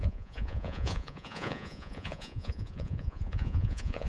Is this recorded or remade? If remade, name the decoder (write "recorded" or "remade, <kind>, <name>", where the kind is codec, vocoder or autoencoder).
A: remade, vocoder, Vocos